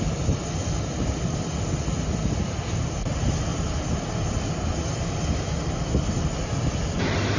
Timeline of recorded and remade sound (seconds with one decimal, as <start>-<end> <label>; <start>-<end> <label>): 0.0-7.4 recorded